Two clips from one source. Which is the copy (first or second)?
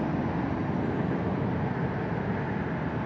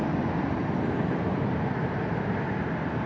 second